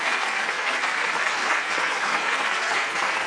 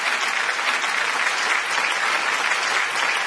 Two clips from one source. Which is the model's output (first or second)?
first